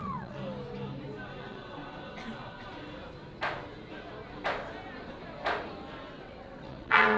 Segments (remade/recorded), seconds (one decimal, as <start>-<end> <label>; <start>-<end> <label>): 0.0-0.4 remade; 0.4-1.4 recorded; 1.4-1.8 remade; 1.8-6.1 recorded; 6.1-7.2 remade